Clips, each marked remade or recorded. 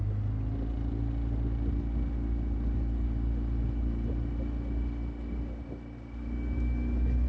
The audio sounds recorded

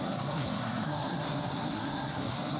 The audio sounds remade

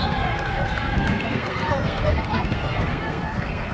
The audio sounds remade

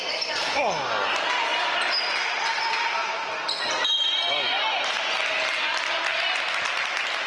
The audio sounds recorded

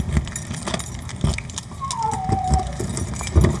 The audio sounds recorded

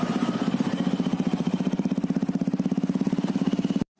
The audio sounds remade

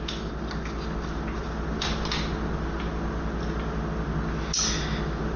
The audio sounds recorded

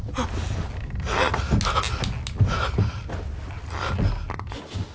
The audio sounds recorded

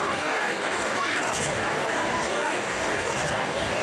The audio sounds remade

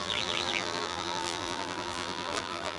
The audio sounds remade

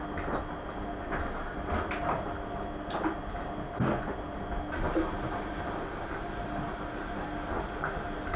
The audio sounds recorded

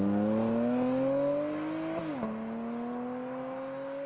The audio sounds recorded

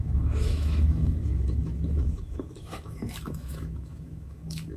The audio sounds remade